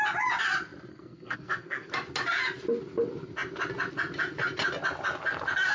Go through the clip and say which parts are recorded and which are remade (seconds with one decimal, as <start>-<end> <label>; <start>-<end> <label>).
0.0-0.9 recorded; 0.9-1.9 remade; 1.9-5.7 recorded